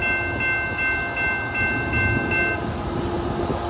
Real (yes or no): yes